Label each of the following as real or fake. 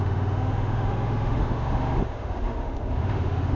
fake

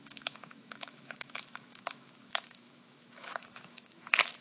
fake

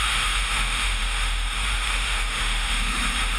fake